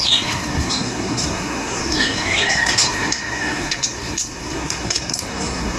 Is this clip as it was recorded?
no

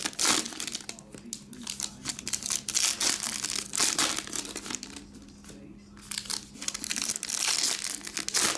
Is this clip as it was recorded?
yes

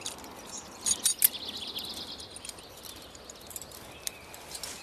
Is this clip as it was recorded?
yes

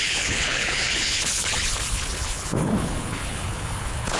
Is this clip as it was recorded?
no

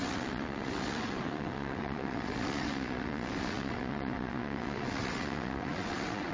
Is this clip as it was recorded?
no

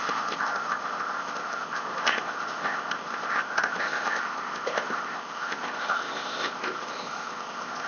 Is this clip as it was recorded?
no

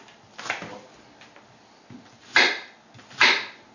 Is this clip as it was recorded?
yes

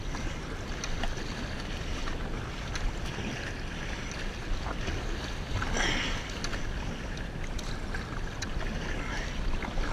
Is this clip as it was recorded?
yes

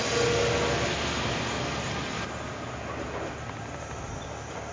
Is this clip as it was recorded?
yes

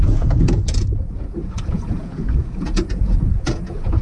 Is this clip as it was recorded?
no